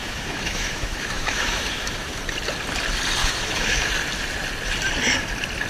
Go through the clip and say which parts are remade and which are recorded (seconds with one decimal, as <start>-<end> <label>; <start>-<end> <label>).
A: 0.0-2.2 remade; 2.2-3.2 recorded; 3.2-3.9 remade; 3.9-5.7 recorded